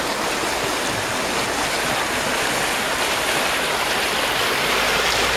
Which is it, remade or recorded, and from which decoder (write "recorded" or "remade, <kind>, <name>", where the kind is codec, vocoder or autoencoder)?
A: recorded